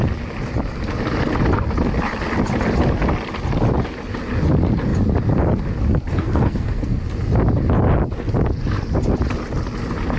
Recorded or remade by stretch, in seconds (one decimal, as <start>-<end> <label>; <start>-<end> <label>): 0.0-6.1 recorded; 6.1-7.0 remade; 7.0-10.2 recorded